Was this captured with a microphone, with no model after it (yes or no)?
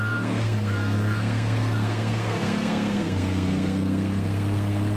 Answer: no